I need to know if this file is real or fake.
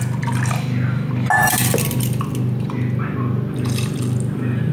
real